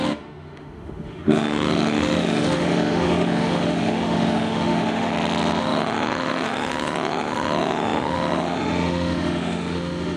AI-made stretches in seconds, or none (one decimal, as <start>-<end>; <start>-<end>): 0.0-5.1; 5.6-10.2